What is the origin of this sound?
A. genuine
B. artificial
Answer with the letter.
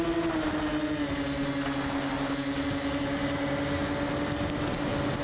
A